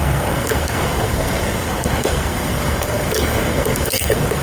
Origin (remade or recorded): remade